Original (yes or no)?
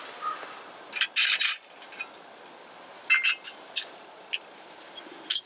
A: yes